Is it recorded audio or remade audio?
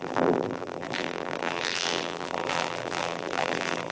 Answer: remade